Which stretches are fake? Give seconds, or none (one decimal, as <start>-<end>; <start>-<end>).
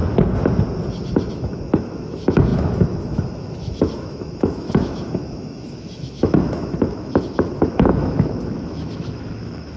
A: 1.3-9.8